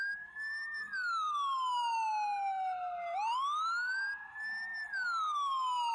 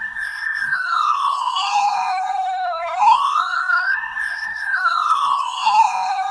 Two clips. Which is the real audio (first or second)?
first